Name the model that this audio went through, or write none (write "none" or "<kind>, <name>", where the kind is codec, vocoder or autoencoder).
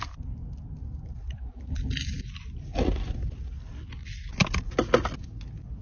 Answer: none